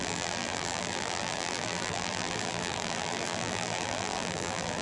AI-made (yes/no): yes